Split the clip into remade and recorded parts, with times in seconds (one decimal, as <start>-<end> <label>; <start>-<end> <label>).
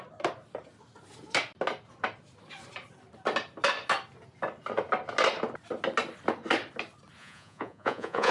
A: 0.0-7.2 recorded; 7.2-8.3 remade